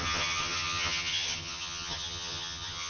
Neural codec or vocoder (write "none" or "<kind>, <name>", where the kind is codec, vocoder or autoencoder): vocoder, HiFi-GAN